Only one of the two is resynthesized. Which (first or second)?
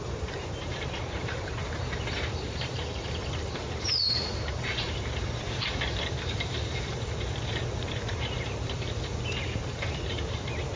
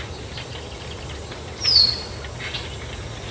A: first